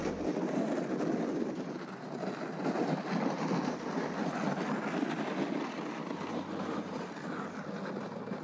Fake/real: real